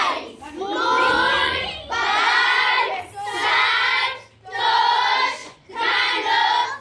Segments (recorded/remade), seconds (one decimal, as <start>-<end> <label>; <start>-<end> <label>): 0.0-1.4 recorded; 1.4-2.8 remade; 2.8-5.4 recorded; 5.4-6.1 remade; 6.1-6.8 recorded